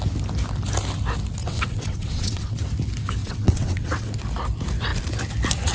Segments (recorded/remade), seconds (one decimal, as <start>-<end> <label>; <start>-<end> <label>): 0.0-1.4 recorded; 1.4-2.6 remade; 2.6-3.2 recorded; 3.2-4.1 remade; 4.1-5.7 recorded